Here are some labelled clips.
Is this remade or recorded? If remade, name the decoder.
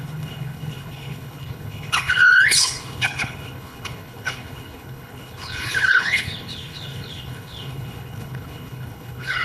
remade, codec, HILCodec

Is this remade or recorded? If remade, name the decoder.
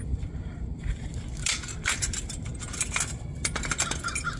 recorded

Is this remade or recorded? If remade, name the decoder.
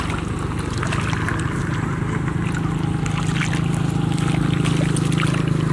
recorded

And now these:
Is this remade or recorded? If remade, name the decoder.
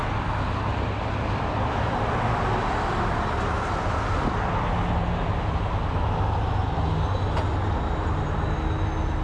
recorded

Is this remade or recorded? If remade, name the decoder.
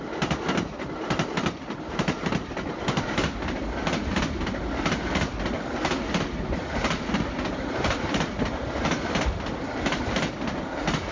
recorded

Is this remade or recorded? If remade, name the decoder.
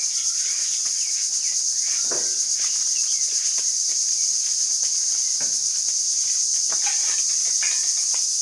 recorded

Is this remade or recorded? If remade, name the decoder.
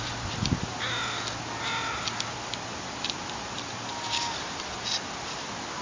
recorded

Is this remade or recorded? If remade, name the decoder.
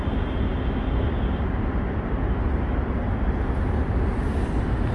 recorded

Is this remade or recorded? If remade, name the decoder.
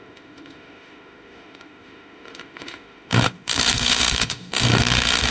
remade, autoencoder, DAC-VAE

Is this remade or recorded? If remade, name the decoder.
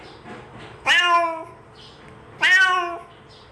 recorded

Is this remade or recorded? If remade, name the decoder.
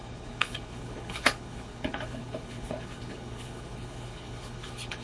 remade, codec, HILCodec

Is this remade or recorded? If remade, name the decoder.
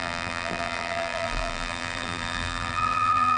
remade, vocoder, BigVGAN v2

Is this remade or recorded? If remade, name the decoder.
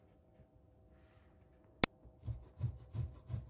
recorded